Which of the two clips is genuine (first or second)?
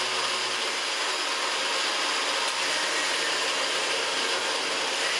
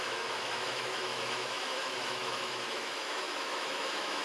first